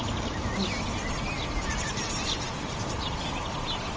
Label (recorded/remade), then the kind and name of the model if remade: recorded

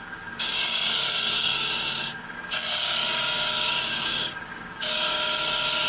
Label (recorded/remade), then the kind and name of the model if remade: remade, codec, DAC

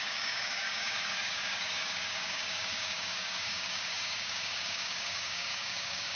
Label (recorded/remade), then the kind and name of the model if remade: remade, codec, DAC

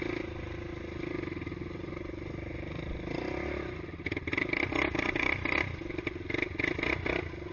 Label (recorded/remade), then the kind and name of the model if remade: recorded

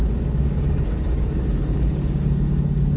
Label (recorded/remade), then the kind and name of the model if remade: remade, codec, DAC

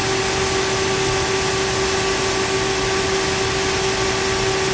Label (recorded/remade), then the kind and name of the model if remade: recorded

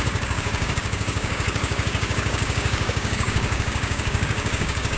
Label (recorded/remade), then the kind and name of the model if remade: remade, codec, DAC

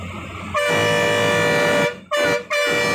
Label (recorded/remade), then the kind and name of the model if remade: recorded